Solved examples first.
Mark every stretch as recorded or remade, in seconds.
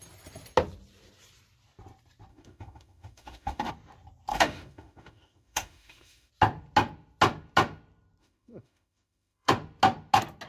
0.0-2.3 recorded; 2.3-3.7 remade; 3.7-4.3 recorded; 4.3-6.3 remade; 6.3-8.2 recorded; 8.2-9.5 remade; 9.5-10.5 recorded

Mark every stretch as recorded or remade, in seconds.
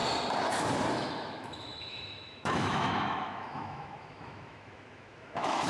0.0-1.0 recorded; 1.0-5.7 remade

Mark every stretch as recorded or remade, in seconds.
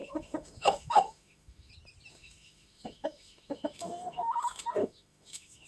0.0-1.7 remade; 1.7-2.1 recorded; 2.1-5.7 remade